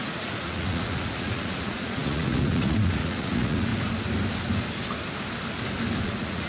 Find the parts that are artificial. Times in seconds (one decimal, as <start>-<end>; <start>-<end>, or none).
0.0-3.7; 6.0-6.5